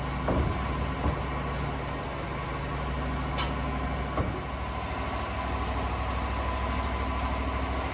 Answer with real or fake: real